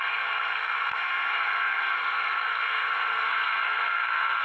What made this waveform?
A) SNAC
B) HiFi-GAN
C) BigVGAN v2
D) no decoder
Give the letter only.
A